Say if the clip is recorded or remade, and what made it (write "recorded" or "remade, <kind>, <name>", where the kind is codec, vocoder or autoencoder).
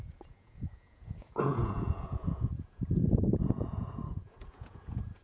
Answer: remade, vocoder, Vocos